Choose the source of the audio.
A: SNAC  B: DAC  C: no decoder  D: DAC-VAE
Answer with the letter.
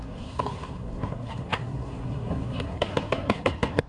A